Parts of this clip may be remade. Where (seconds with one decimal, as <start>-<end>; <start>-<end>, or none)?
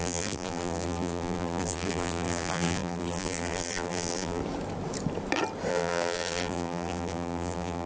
0.0-4.4; 5.7-7.9